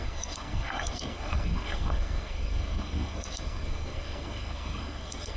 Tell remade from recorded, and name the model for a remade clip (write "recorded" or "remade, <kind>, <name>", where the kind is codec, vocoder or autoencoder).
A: remade, codec, SNAC